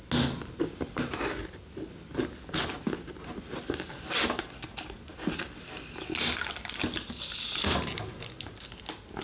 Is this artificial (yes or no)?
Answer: no